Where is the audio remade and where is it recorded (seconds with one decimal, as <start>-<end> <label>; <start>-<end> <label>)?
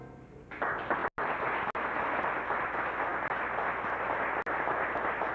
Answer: 0.0-5.3 recorded